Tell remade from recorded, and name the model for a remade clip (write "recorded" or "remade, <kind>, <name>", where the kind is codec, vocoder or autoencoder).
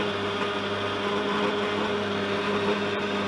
recorded